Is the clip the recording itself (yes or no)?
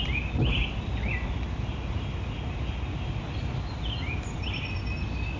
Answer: yes